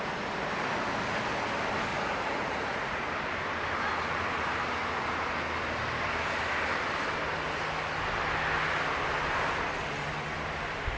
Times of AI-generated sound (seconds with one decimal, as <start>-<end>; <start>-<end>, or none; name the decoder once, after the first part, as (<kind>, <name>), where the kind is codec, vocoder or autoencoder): 1.9-3.1 (vocoder, Vocos)